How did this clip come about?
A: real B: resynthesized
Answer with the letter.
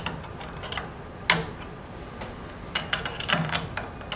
A